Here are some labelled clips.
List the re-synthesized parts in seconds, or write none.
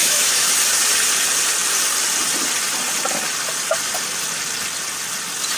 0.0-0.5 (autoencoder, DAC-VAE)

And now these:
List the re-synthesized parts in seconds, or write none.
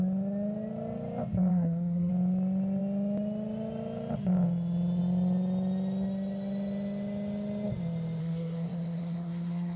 1.5-2.1 (codec, SNAC); 8.2-9.8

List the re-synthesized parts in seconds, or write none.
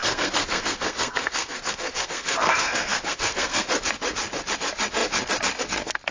0.0-3.7 (codec, SNAC)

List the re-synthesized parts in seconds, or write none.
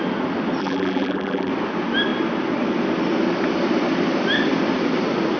0.6-1.5 (vocoder, BigVGAN v2)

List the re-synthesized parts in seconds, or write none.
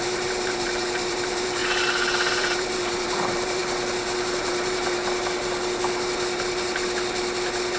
0.0-1.6 (vocoder, BigVGAN v2); 2.3-3.6; 4.2-5.0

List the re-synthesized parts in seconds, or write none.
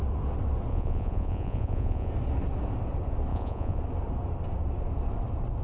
0.7-2.1 (vocoder, Vocos); 3.3-3.8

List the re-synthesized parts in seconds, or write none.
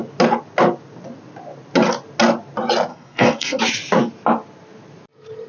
2.9-3.6 (codec, SNAC)